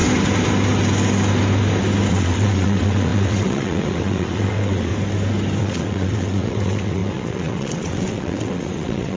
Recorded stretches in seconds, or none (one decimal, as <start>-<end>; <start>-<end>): 0.0-2.1; 4.9-5.6